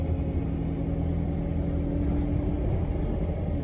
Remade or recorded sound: recorded